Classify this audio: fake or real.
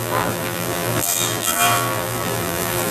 fake